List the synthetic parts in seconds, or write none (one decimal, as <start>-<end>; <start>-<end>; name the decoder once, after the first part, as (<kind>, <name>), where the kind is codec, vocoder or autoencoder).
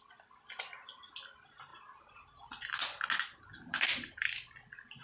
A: none